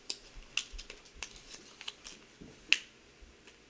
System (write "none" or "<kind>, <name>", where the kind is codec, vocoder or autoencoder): none